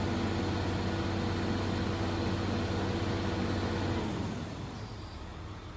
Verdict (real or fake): real